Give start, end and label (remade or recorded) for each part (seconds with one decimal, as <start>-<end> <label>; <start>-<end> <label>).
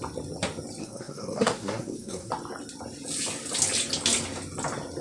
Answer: 0.0-0.8 recorded; 0.8-2.3 remade; 2.3-5.0 recorded